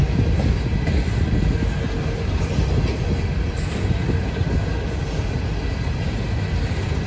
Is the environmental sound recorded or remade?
recorded